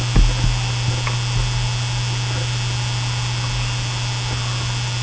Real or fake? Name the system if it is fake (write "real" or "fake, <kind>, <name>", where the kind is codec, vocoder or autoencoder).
real